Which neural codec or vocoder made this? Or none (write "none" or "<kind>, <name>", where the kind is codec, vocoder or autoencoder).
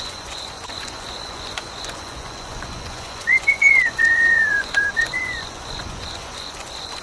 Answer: vocoder, Vocos